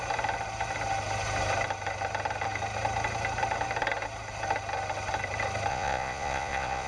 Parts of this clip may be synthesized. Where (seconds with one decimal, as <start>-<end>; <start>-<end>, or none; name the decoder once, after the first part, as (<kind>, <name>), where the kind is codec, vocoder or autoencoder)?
5.7-6.9 (vocoder, Vocos)